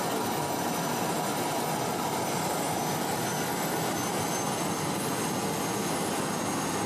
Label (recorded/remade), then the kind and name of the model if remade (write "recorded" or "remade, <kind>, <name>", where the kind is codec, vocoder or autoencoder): recorded